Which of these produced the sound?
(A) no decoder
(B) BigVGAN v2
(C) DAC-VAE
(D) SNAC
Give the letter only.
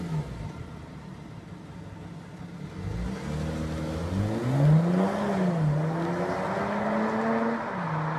A